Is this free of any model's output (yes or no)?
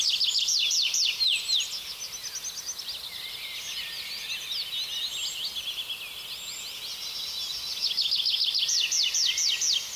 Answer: yes